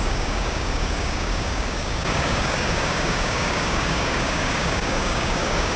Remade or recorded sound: remade